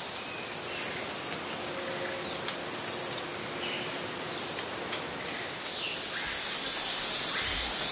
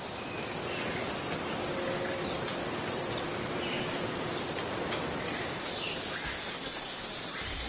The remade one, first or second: second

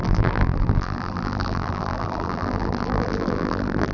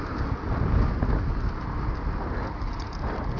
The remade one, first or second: first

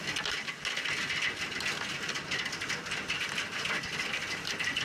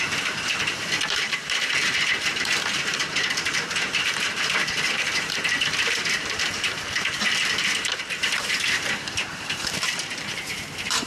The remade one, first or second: second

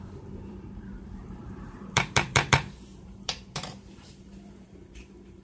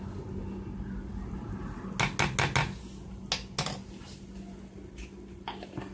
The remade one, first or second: first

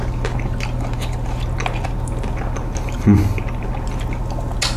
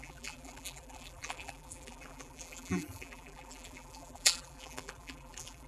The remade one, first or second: second